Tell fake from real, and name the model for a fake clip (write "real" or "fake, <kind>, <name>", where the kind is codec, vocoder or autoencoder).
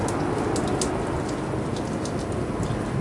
real